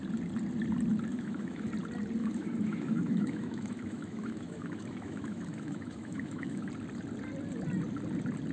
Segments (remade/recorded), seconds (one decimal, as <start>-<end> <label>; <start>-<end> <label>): 0.0-1.1 recorded; 1.1-1.7 remade; 1.7-2.2 recorded; 2.2-6.7 remade; 6.7-8.5 recorded